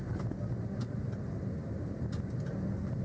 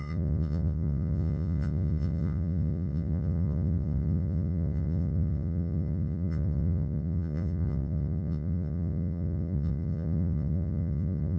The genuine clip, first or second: first